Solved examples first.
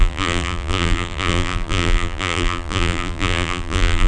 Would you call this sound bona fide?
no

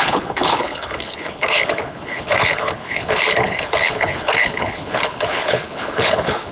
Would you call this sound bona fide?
no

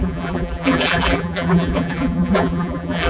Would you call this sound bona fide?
no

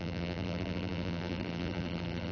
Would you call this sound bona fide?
no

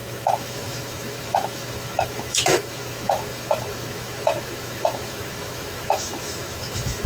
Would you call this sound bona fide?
no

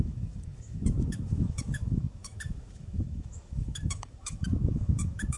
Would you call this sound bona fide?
no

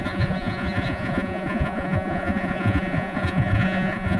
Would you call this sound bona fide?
no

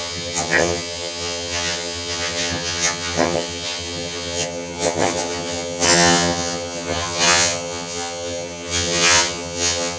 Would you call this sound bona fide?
no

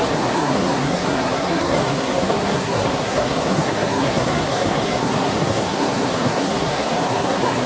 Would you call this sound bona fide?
no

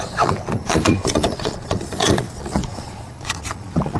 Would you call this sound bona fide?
no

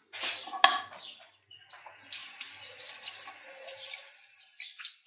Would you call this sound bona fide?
yes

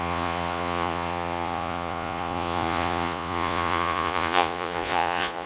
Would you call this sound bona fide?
no